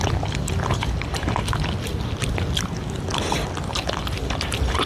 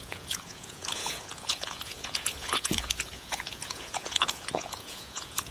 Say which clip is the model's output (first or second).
second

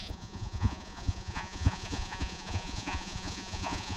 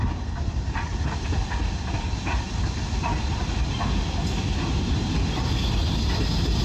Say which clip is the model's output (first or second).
first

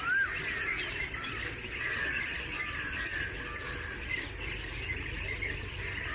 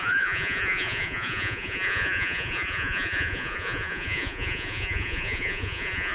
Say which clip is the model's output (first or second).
second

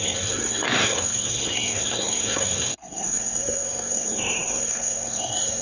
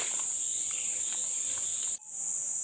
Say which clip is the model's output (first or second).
first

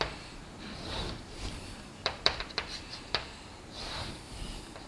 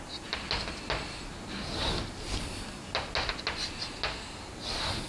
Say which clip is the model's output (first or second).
first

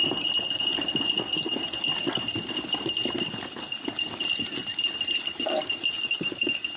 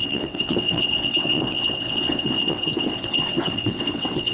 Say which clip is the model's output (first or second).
second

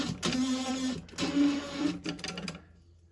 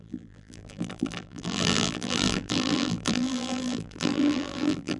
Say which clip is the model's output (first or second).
second